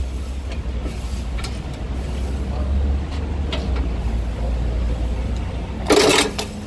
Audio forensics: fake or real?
real